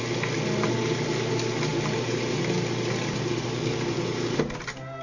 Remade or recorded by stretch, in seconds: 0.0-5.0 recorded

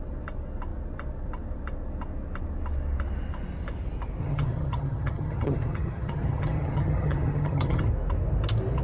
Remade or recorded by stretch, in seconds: 0.0-4.2 recorded; 4.2-7.9 remade; 7.9-8.8 recorded

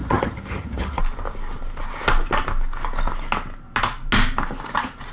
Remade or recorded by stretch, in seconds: 0.0-1.0 remade; 1.0-5.1 recorded

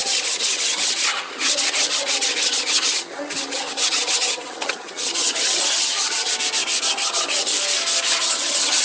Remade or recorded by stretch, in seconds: 0.0-6.3 remade; 6.3-6.9 recorded; 6.9-7.5 remade; 7.5-8.2 recorded; 8.2-8.8 remade

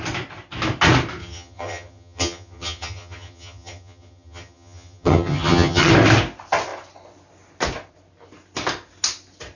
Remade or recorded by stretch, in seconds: 0.0-1.2 recorded; 1.2-5.9 remade; 5.9-9.6 recorded

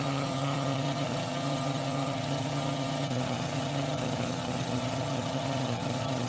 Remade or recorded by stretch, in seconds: 0.0-6.3 remade

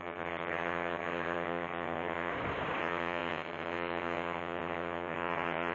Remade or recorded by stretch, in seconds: 0.0-2.3 remade; 2.3-2.8 recorded; 2.8-5.7 remade

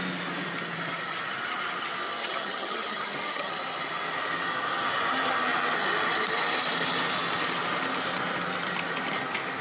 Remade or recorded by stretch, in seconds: 0.0-2.2 recorded; 2.2-3.5 remade; 3.5-9.6 recorded